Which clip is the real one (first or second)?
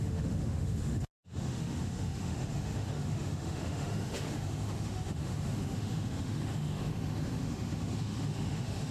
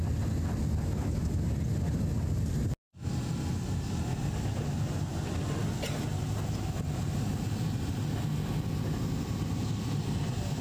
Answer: second